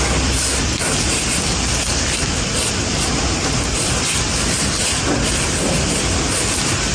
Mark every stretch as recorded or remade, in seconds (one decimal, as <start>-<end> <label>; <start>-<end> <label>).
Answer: 0.0-6.9 recorded